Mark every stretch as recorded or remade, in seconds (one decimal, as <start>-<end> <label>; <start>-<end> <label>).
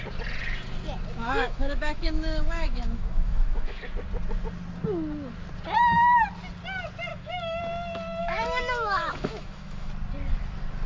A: 0.0-1.2 recorded; 1.2-3.8 remade; 3.8-7.1 recorded; 7.1-7.6 remade; 7.6-8.2 recorded; 8.2-9.9 remade; 9.9-10.9 recorded